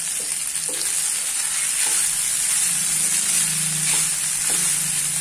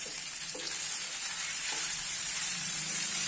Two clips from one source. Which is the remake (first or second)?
second